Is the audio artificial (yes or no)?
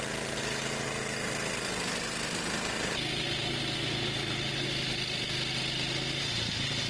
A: no